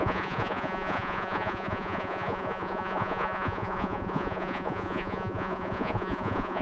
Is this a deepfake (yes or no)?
yes